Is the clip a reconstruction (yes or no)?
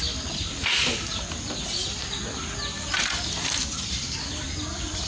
no